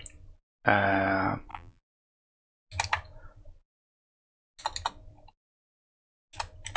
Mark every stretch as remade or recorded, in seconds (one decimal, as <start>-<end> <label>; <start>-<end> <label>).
0.0-1.5 recorded; 1.5-2.3 remade; 2.3-6.8 recorded